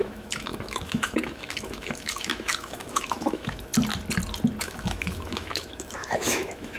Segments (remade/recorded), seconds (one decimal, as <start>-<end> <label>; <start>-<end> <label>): 0.0-3.7 remade; 3.7-4.6 recorded; 4.6-6.8 remade